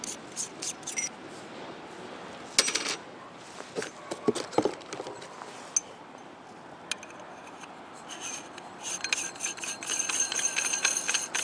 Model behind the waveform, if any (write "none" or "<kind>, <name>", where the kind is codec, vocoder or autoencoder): none